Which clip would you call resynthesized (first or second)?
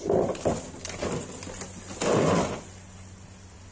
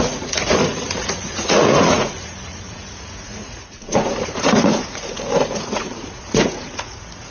second